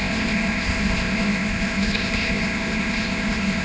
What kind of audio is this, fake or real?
fake